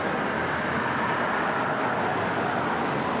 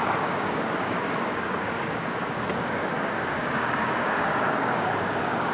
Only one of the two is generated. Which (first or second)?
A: second